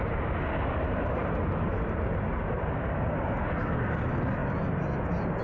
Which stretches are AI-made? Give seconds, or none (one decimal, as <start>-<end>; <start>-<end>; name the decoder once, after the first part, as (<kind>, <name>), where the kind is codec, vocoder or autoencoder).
none